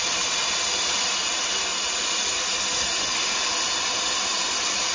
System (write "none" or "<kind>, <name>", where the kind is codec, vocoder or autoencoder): none